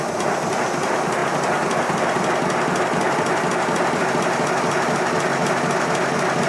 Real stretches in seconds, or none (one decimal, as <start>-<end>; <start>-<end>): 0.0-6.5